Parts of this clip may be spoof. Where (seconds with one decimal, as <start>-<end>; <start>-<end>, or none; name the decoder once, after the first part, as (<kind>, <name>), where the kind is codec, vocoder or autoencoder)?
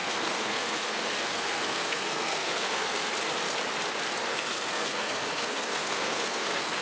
0.0-3.1 (codec, SNAC); 4.3-6.8